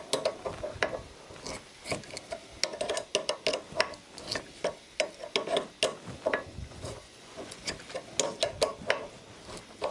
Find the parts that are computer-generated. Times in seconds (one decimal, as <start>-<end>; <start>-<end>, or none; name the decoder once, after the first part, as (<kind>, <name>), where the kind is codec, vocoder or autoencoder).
6.6-7.7 (vocoder, Vocos)